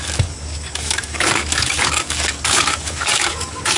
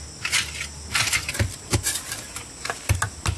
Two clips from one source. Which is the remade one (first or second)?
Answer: first